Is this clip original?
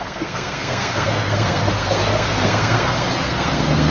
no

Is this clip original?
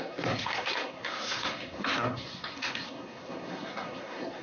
no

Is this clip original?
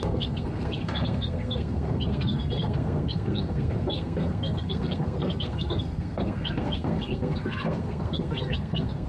no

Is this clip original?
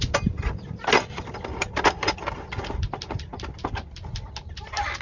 yes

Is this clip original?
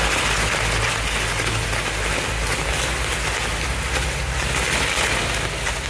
yes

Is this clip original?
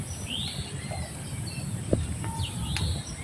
yes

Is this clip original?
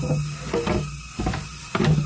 yes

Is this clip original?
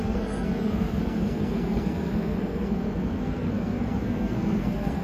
no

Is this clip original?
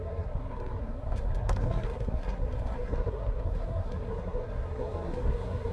no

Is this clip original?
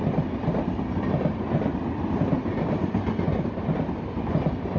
yes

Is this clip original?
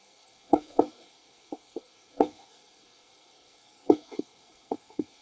no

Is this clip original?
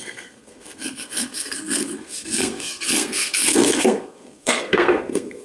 no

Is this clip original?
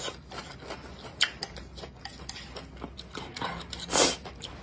yes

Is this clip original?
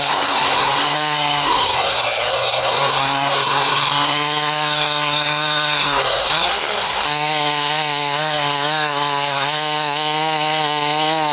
no